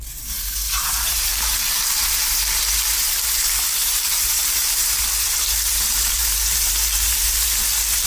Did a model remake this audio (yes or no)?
yes